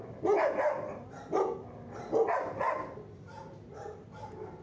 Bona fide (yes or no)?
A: yes